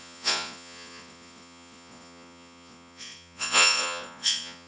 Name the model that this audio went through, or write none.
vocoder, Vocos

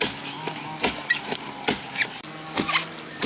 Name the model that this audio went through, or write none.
none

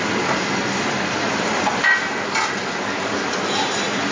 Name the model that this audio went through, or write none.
none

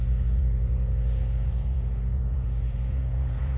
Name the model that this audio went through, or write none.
vocoder, Vocos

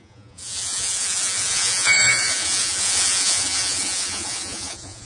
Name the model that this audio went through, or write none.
vocoder, Vocos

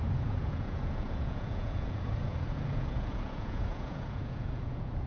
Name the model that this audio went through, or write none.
vocoder, Vocos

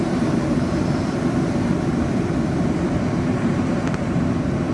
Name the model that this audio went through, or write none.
none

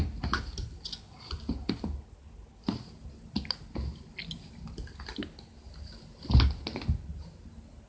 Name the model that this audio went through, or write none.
none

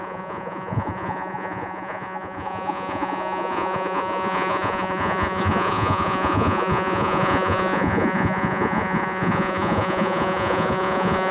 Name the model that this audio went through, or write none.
vocoder, Vocos